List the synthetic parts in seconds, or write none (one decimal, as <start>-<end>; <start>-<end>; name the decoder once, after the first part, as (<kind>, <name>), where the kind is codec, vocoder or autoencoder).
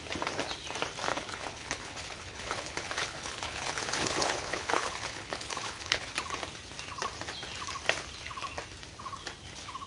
1.1-6.1 (codec, HILCodec)